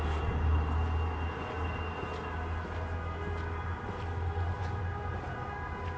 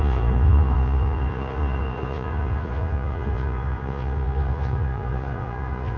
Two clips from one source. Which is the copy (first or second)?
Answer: second